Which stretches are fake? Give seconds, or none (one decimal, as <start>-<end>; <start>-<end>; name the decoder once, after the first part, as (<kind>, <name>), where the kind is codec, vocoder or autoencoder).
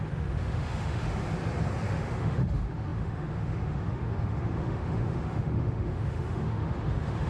0.0-1.2 (autoencoder, DAC-VAE); 1.9-7.3